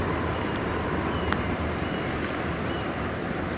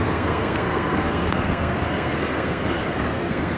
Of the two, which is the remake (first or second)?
second